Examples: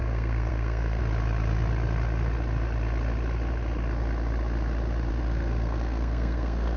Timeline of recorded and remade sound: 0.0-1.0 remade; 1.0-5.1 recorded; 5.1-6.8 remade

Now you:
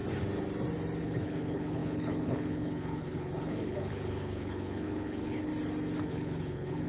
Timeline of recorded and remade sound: 0.0-1.0 recorded; 1.0-5.5 remade; 5.5-6.0 recorded; 6.0-6.9 remade

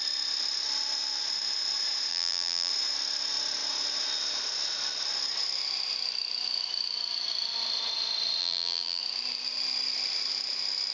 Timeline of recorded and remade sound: 0.0-2.1 recorded; 2.1-2.7 remade; 2.7-8.4 recorded; 8.4-9.0 remade; 9.0-10.9 recorded

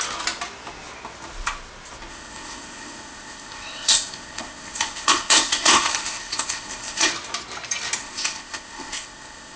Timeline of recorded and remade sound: 0.0-2.1 recorded; 2.1-7.1 remade; 7.1-8.0 recorded; 8.0-9.6 remade